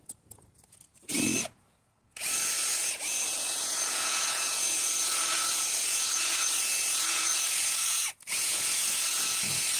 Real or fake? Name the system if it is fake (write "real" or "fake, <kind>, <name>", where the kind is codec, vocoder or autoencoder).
fake, vocoder, Vocos